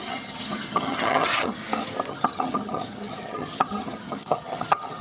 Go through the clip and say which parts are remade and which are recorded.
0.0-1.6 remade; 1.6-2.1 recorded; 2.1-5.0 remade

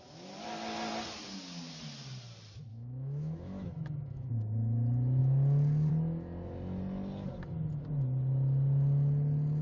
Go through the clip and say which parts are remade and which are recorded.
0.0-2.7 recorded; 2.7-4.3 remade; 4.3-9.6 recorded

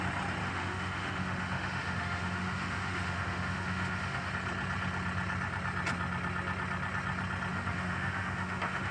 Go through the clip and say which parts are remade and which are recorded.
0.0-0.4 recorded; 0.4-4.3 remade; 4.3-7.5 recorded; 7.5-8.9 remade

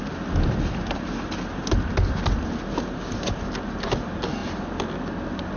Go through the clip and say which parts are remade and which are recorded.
0.0-5.6 recorded

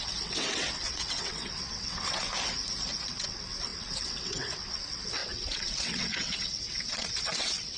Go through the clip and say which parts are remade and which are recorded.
0.0-2.3 remade; 2.3-3.1 recorded; 3.1-7.8 remade